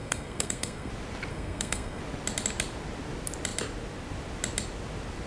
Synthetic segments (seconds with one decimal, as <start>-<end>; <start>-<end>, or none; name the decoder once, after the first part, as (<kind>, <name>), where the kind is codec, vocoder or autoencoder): 0.0-0.9 (codec, SNAC); 1.3-2.0